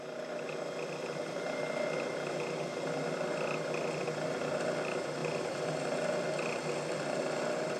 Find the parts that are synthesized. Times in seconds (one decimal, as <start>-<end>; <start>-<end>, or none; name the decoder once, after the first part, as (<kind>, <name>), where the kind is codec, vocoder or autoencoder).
none